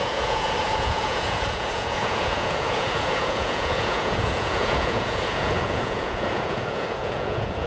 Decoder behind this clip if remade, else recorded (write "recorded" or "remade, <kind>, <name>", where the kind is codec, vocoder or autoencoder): remade, vocoder, Vocos